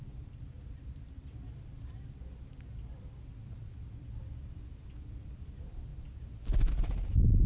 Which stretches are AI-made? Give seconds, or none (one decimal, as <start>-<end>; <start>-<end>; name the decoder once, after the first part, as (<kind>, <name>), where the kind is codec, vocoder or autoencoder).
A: 0.0-5.9 (vocoder, BigVGAN v2); 6.7-7.5